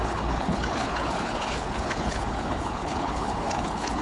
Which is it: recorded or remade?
remade